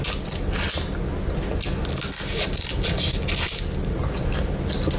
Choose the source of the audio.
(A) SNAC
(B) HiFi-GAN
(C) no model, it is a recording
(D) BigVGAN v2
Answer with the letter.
C